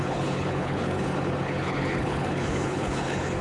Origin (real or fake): fake